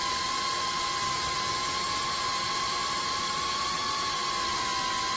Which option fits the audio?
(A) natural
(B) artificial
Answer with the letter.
A